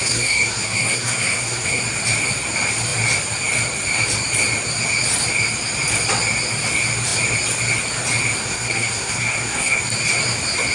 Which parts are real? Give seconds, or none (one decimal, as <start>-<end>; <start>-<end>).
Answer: 1.8-8.4; 9.8-10.7